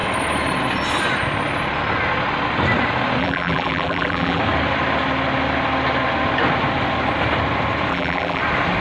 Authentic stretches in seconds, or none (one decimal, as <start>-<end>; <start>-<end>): 0.0-3.2; 4.4-7.9; 8.4-8.8